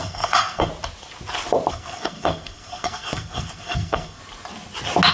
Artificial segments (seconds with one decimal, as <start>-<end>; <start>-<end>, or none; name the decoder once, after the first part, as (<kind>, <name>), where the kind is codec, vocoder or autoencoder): 0.0-0.7 (codec, SNAC); 1.7-4.2